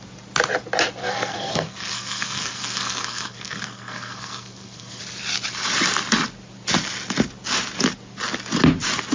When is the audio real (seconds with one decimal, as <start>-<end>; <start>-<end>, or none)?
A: 0.0-1.0; 5.0-9.1